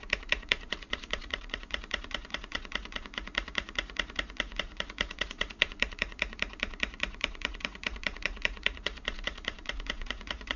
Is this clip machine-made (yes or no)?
yes